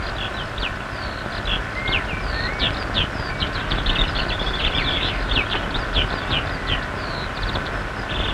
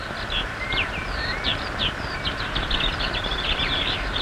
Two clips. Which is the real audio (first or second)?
first